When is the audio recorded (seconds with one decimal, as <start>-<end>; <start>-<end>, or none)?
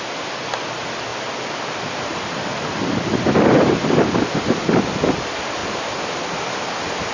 0.0-5.6; 6.2-7.1